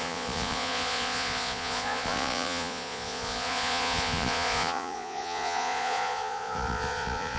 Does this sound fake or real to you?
fake